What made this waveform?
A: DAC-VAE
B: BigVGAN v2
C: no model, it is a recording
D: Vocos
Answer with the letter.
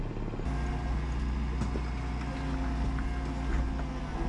C